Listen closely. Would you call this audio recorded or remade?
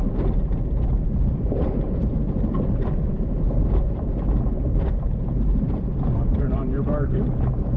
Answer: remade